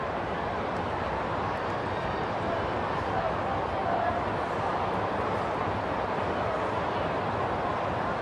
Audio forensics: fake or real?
real